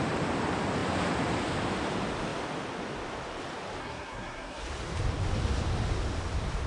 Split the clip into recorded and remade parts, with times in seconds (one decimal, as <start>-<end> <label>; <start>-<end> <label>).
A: 0.0-3.8 recorded; 3.8-4.6 remade; 4.6-6.7 recorded